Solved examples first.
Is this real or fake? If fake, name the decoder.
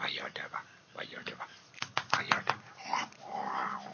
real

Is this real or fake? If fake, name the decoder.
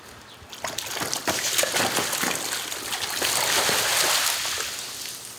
real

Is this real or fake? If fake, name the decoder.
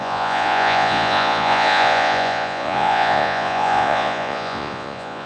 fake, vocoder, Vocos